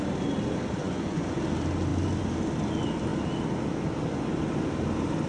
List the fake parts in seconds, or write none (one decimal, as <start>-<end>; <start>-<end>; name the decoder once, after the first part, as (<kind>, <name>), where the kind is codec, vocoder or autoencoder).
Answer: 0.8-1.4 (vocoder, Vocos)

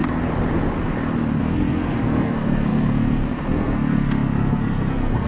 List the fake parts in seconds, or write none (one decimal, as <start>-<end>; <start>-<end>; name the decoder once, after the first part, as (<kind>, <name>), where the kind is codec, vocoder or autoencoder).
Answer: 1.4-5.3 (codec, SNAC)

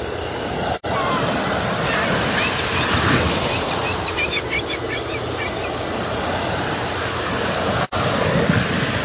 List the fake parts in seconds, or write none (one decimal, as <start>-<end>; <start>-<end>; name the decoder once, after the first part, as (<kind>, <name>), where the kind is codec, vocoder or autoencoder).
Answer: none

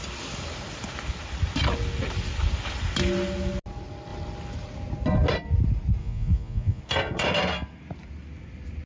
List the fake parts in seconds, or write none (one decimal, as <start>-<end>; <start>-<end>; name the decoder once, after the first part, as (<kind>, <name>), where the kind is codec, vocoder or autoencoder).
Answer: 6.0-6.8 (vocoder, Vocos)

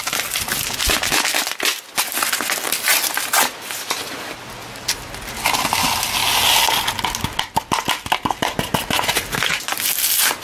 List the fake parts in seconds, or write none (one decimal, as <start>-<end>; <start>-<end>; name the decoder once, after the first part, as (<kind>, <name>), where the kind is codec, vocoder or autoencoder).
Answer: none

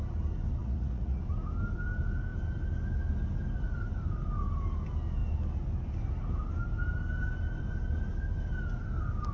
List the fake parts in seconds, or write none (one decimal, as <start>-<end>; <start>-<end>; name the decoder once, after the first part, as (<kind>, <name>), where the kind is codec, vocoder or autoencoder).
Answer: 0.6-1.2 (vocoder, Vocos)